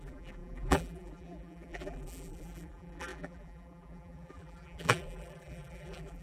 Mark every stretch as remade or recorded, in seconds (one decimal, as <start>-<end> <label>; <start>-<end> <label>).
0.0-6.2 remade